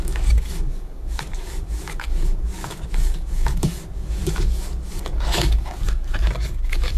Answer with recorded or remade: remade